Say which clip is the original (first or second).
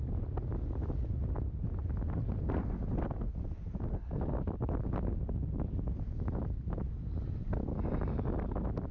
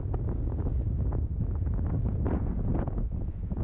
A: first